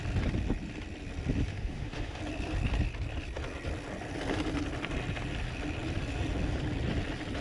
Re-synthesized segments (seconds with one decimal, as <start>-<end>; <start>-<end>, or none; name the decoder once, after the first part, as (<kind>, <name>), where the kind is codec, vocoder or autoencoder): 1.5-2.2 (autoencoder, DAC-VAE)